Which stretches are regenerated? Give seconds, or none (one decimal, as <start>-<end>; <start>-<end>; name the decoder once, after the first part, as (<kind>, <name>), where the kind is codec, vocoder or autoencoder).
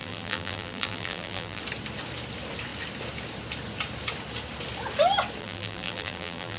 0.0-1.6 (vocoder, BigVGAN v2); 5.4-6.6